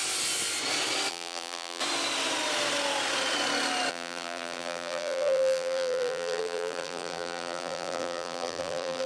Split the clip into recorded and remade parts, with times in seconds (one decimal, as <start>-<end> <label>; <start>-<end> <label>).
0.0-1.1 recorded; 1.1-1.8 remade; 1.8-3.9 recorded; 3.9-9.1 remade